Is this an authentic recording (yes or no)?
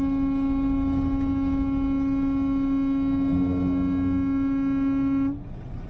yes